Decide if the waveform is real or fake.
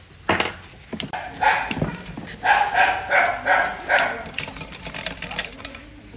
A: real